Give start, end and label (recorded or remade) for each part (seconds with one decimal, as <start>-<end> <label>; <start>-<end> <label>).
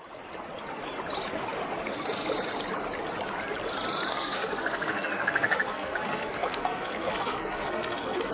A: 0.0-4.1 recorded; 4.1-8.3 remade